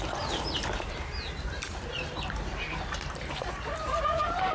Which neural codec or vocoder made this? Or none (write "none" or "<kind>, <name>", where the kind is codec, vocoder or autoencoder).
vocoder, BigVGAN v2